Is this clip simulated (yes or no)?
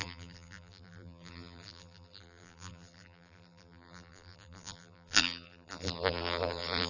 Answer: yes